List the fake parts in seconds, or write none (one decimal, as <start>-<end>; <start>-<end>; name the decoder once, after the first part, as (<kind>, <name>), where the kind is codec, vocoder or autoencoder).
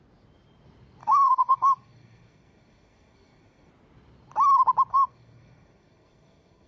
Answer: 1.0-3.7 (codec, SNAC); 4.9-6.7